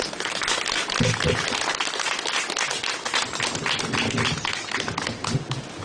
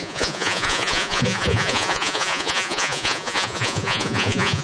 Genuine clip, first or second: first